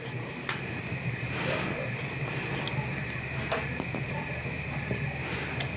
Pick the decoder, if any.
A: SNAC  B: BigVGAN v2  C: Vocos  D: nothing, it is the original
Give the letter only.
D